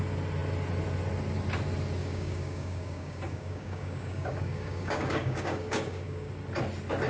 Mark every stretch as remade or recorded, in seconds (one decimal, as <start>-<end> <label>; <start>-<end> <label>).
0.0-2.0 recorded; 2.0-6.3 remade; 6.3-7.1 recorded